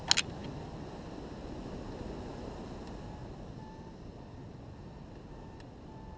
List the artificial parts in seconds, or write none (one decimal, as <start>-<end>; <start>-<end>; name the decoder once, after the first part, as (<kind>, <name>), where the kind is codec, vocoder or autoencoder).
none